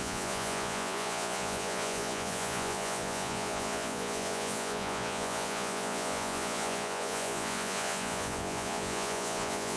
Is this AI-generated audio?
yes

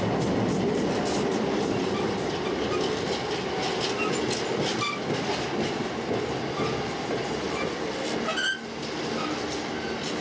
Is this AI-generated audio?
no